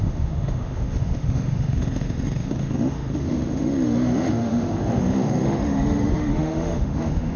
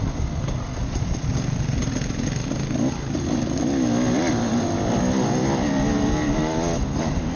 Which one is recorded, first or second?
second